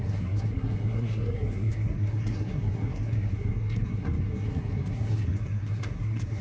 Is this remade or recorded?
remade